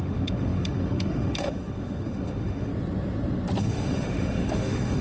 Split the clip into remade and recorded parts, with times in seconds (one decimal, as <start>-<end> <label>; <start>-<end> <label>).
0.0-2.7 remade; 2.7-3.6 recorded; 3.6-5.0 remade